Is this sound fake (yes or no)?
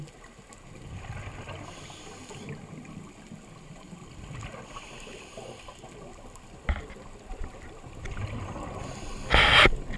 no